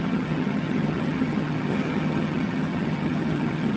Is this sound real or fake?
fake